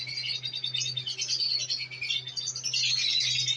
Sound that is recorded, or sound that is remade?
recorded